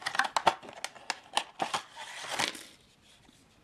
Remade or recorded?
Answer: recorded